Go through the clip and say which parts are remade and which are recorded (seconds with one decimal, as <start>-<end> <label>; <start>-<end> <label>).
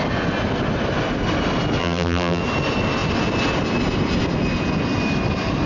0.0-1.8 recorded; 1.8-2.4 remade; 2.4-5.7 recorded